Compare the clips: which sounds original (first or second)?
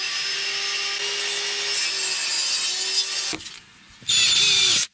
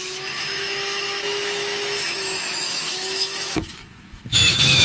first